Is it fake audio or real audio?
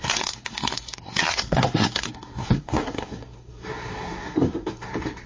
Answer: fake